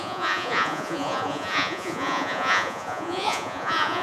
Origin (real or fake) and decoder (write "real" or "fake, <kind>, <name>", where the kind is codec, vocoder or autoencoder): fake, vocoder, Vocos